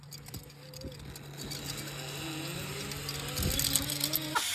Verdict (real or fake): real